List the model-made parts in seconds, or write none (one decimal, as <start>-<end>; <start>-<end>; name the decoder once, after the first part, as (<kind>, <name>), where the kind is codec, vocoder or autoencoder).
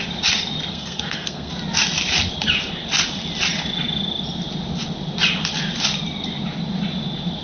0.7-1.5 (codec, SNAC)